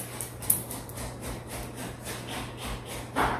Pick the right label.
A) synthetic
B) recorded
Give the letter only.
B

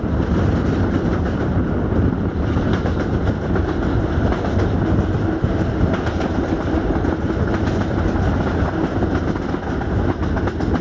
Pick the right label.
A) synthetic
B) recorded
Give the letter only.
B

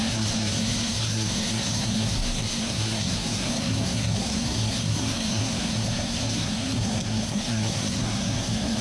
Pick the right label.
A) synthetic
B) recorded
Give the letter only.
A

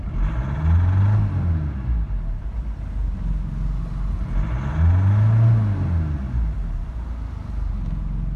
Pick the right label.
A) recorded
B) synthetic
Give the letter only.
A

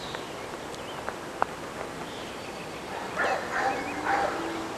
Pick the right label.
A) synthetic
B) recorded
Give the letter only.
B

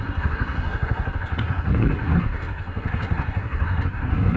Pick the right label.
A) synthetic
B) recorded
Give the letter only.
A